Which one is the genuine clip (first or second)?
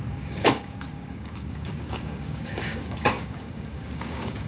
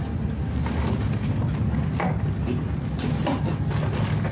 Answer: second